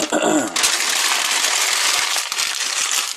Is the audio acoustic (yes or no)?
yes